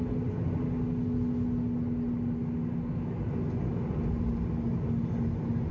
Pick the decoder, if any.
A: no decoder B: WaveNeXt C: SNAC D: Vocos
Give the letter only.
A